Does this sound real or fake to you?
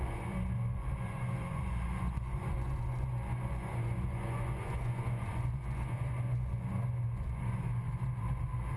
fake